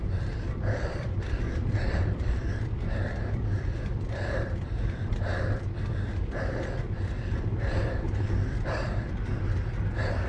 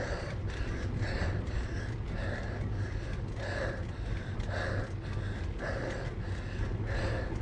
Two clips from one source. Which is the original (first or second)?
second